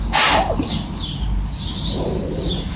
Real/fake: fake